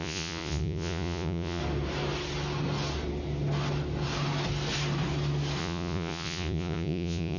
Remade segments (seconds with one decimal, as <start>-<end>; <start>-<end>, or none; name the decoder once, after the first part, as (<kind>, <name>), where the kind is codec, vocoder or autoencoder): 0.0-1.6 (vocoder, Vocos); 5.6-7.4